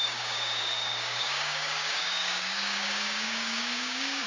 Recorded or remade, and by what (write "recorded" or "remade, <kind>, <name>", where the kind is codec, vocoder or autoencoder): remade, codec, DAC